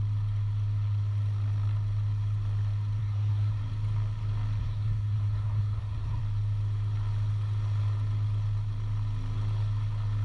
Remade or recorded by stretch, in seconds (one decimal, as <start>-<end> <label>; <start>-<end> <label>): 0.0-3.0 recorded; 3.0-3.6 remade; 3.6-4.6 recorded; 4.6-6.2 remade; 6.2-10.2 recorded